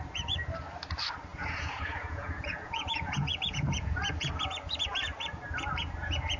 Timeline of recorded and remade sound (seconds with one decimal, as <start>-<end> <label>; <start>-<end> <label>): 0.0-1.3 recorded; 1.3-4.1 remade; 4.1-6.4 recorded